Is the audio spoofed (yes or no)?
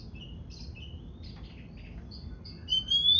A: no